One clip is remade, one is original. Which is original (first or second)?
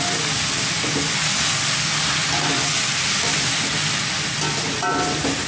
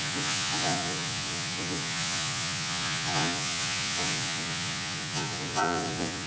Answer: first